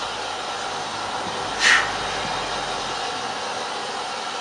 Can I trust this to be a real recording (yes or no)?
yes